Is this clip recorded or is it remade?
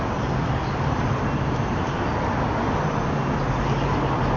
recorded